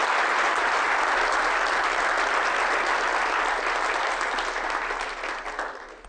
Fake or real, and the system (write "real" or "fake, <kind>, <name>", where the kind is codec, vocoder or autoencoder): real